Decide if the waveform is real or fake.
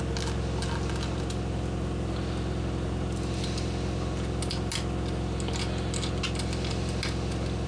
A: real